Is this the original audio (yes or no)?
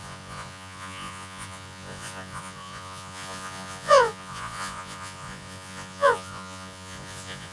no